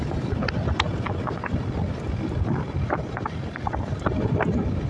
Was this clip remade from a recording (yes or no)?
no